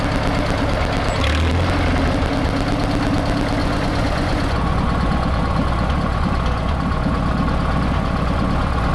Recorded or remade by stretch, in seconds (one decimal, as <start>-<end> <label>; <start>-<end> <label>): 0.0-3.6 recorded; 3.6-8.9 remade